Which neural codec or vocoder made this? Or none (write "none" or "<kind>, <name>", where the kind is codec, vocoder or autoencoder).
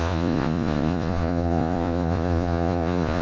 vocoder, Vocos